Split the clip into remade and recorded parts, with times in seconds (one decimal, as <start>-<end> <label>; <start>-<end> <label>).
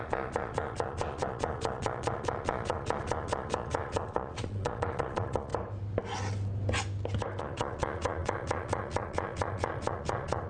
0.0-5.5 remade; 5.5-7.4 recorded; 7.4-10.5 remade